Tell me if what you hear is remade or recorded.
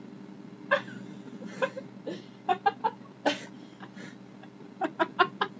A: recorded